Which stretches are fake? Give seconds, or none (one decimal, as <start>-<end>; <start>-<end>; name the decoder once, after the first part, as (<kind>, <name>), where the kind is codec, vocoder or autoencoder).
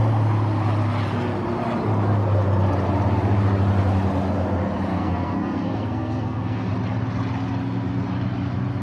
4.9-6.7 (codec, SNAC)